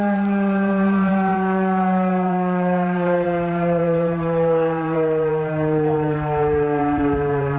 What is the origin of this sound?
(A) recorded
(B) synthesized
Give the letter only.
B